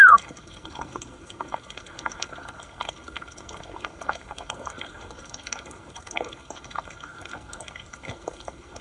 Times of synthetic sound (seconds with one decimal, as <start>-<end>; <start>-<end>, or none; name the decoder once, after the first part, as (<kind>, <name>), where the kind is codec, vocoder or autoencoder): 0.0-8.8 (codec, SNAC)